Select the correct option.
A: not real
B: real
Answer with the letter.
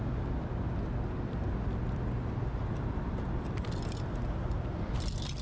B